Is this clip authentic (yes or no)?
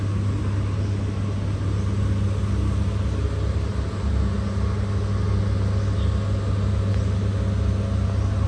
yes